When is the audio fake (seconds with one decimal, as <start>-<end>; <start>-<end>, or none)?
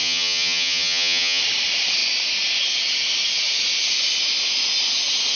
0.0-1.4